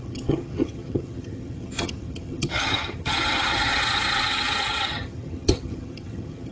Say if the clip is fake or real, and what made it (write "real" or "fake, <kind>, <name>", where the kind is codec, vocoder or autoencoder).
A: fake, vocoder, HiFi-GAN